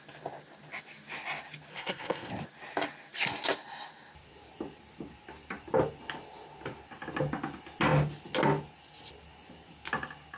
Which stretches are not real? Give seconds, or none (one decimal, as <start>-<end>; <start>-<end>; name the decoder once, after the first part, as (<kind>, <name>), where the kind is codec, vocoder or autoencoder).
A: 1.7-2.3 (codec, ZipCodec)